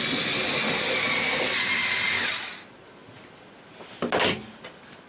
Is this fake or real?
real